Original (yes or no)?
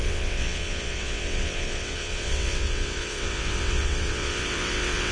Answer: no